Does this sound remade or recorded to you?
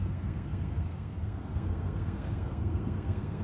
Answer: remade